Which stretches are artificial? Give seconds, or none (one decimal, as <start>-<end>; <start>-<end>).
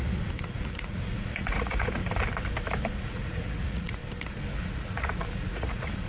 0.0-2.0; 3.0-4.0; 4.7-6.1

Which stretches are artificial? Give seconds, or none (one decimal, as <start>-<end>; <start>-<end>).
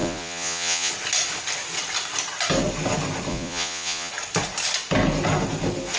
0.0-0.9; 3.3-4.1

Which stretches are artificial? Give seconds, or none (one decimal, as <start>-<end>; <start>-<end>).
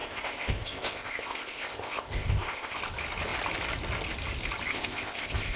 0.0-2.8; 4.7-5.6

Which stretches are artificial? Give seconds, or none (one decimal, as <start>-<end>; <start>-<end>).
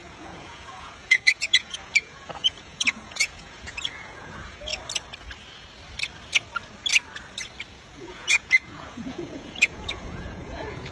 0.0-4.7; 7.7-10.9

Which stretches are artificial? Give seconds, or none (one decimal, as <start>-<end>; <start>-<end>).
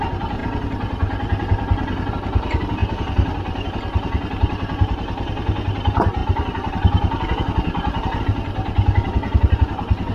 6.2-8.2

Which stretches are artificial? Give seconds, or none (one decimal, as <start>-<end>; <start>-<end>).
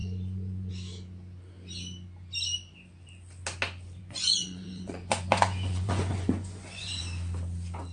0.0-0.7; 4.0-7.0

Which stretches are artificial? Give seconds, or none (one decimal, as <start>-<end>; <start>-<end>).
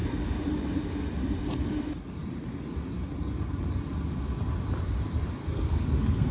5.4-6.3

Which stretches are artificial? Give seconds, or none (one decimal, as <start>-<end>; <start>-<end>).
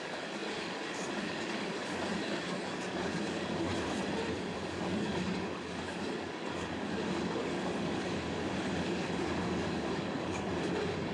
0.0-3.7; 4.4-11.1